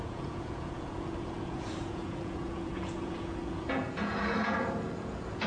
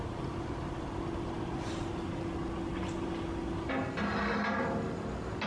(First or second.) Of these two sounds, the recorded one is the second